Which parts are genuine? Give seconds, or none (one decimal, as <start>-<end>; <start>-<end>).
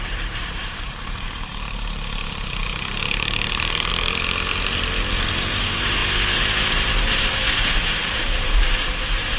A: 1.5-3.0; 3.9-5.3